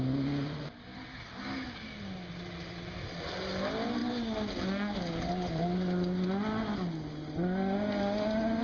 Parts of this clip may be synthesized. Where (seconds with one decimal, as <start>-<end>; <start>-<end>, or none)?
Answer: none